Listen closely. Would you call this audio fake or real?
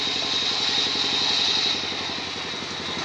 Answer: real